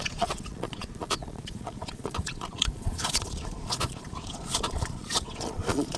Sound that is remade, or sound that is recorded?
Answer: remade